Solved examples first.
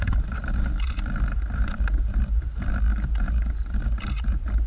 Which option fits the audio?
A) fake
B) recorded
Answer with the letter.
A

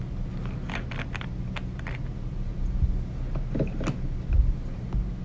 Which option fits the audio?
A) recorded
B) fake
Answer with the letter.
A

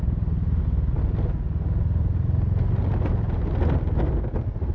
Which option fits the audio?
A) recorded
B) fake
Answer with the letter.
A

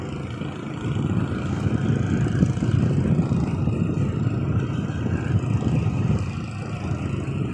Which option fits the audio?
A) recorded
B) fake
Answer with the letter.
A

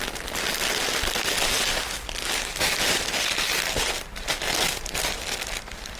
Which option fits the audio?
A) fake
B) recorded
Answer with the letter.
B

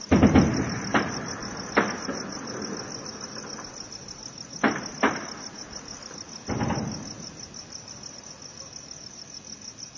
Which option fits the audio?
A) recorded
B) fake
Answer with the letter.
A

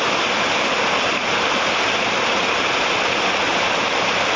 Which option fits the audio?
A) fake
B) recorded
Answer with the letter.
B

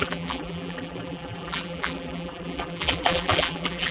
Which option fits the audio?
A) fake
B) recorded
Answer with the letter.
A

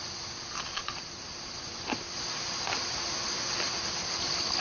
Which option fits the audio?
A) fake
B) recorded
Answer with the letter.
B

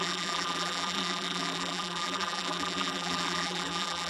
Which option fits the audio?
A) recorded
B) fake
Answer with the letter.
B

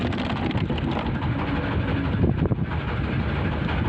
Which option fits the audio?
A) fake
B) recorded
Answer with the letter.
B